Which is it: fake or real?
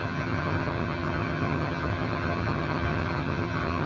fake